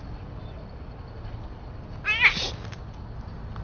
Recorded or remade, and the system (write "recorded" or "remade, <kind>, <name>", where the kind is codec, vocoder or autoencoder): recorded